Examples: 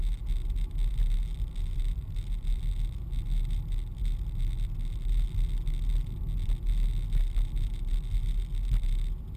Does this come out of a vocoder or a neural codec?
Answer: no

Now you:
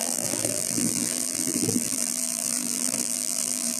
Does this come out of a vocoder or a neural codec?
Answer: yes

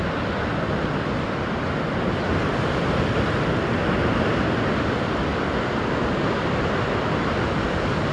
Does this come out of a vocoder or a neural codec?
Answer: no